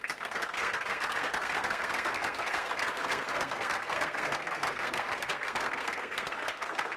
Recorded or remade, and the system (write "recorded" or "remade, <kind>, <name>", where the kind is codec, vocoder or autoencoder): remade, codec, SNAC